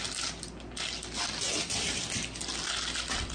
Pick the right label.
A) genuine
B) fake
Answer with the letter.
A